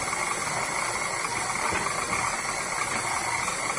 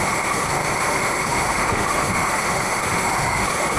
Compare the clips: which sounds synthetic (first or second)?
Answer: second